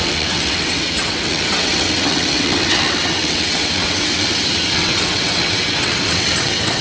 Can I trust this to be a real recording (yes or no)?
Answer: no